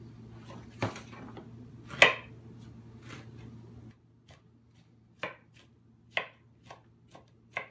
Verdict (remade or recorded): recorded